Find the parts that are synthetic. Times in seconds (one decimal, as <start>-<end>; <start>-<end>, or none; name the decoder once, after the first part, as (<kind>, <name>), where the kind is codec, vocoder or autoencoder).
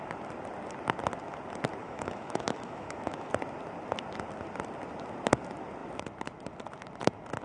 1.8-3.3 (autoencoder, DAC-VAE)